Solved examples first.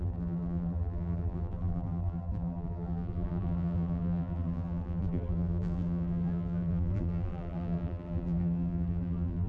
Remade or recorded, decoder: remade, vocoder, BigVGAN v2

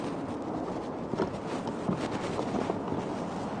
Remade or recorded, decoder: recorded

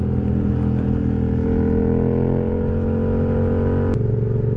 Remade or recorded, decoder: recorded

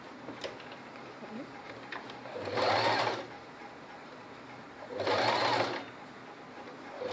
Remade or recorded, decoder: recorded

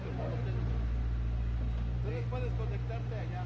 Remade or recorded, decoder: recorded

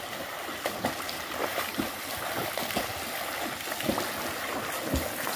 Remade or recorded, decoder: remade, vocoder, BigVGAN v2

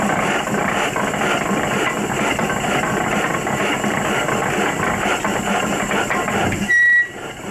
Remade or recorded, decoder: recorded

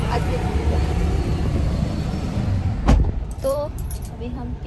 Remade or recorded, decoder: remade, vocoder, BigVGAN v2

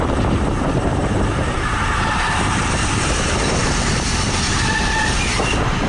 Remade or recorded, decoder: remade, vocoder, BigVGAN v2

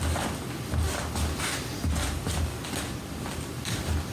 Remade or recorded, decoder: recorded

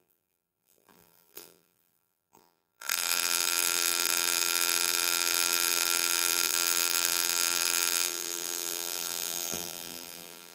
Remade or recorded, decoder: remade, vocoder, BigVGAN v2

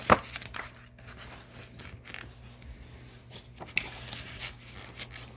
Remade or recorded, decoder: recorded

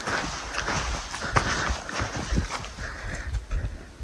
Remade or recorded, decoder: recorded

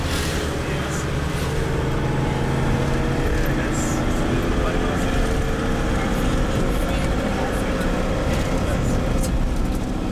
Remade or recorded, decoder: recorded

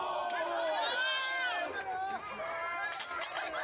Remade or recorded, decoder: recorded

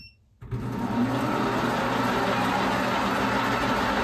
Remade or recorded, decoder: recorded